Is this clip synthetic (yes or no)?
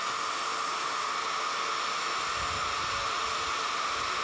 no